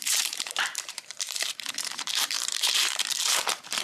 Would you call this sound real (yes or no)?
no